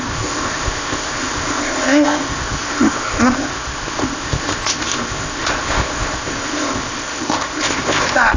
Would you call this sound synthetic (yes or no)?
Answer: yes